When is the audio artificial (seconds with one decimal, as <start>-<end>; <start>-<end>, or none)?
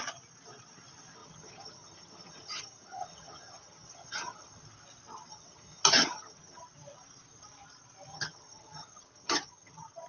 1.2-4.6; 5.3-6.6; 8.1-9.7